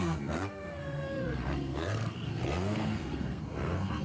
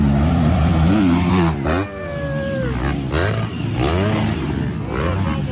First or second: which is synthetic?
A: first